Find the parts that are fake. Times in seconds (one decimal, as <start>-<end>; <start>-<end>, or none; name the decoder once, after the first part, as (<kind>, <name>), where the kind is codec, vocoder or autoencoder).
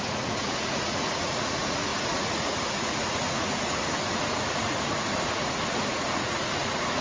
0.0-7.0 (vocoder, Vocos)